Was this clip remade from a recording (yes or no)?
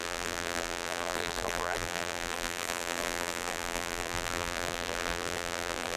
yes